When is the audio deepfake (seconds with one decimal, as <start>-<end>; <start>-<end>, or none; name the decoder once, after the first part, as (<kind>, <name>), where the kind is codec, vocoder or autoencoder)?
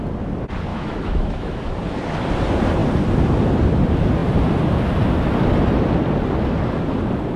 0.7-1.6 (autoencoder, DAC-VAE)